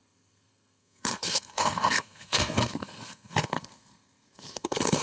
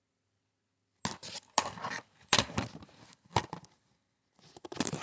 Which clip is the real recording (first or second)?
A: second